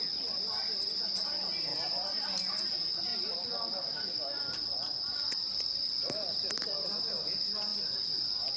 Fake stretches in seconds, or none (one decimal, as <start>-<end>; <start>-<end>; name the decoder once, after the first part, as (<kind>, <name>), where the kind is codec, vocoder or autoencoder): 3.1-6.3 (vocoder, BigVGAN v2)